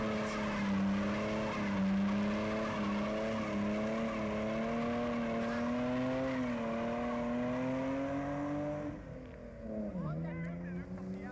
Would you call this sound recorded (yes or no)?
yes